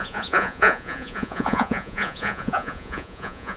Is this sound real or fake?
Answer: fake